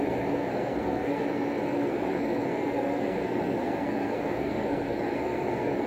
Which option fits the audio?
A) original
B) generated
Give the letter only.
B